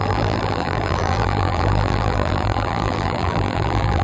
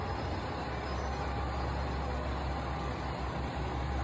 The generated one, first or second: first